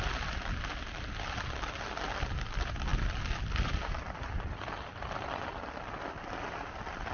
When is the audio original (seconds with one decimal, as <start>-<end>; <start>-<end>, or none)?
0.0-7.1

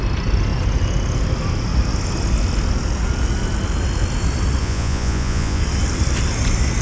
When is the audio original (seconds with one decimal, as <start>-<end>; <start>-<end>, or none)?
0.0-4.6; 5.6-6.8

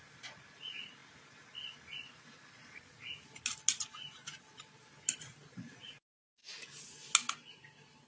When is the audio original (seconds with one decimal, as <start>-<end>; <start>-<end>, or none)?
0.0-8.1

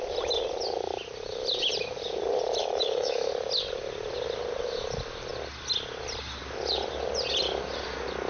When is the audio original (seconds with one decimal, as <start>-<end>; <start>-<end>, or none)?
0.0-2.6; 3.3-8.3